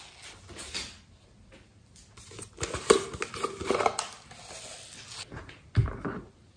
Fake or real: real